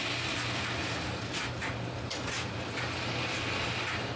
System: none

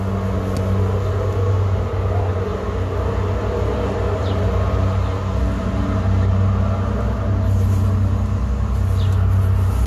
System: none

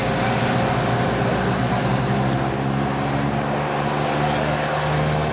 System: none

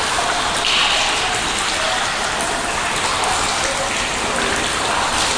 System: none